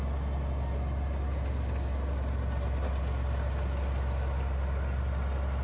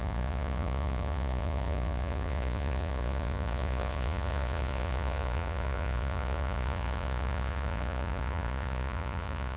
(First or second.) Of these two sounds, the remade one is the second